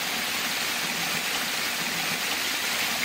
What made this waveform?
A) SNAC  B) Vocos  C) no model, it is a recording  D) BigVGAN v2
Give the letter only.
C